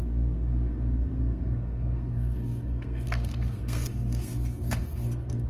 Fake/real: fake